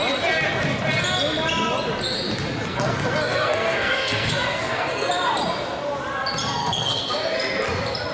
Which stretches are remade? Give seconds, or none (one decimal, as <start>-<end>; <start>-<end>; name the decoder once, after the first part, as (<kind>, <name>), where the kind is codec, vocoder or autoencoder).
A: 2.7-5.1 (codec, SNAC); 6.6-7.1